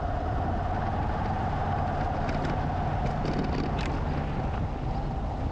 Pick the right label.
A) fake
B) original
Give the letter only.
B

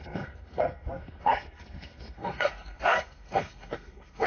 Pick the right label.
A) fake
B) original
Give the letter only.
A